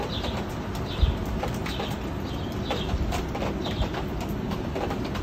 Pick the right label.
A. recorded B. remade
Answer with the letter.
A